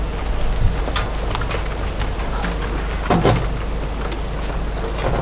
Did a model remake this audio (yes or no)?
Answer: no